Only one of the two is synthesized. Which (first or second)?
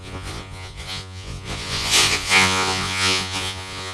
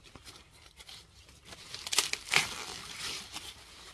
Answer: first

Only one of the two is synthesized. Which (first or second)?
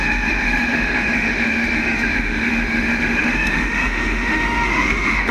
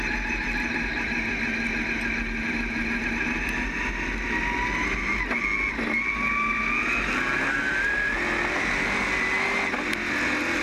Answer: first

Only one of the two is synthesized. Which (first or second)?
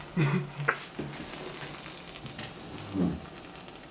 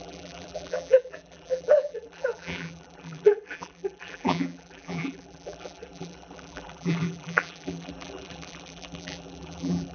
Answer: second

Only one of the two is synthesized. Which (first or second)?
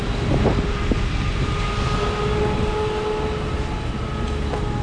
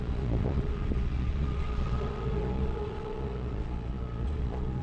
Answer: second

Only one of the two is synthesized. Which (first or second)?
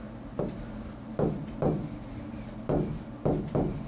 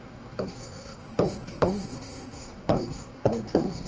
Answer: second